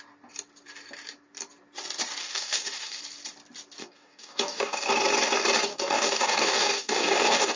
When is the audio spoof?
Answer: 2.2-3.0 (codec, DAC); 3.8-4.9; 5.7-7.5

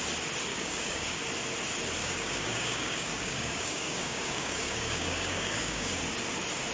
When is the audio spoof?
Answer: 0.5-1.2 (codec, DAC); 2.0-6.0

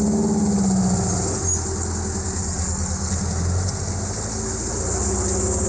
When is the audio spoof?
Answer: 2.4-3.1 (codec, DAC)

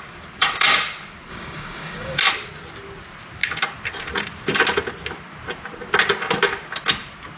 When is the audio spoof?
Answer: 1.3-2.2 (codec, DAC)

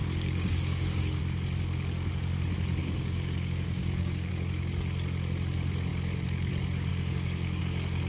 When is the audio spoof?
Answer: 0.0-1.2 (codec, DAC); 2.8-4.3; 6.9-7.6

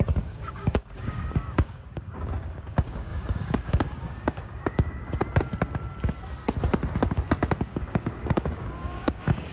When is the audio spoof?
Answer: 0.0-5.2 (codec, DAC); 7.7-9.5

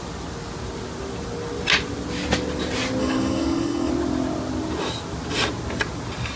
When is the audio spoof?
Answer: 3.0-3.9 (codec, DAC)